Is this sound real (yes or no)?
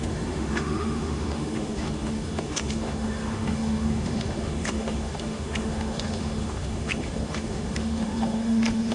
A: no